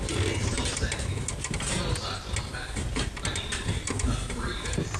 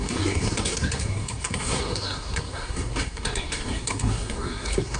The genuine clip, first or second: first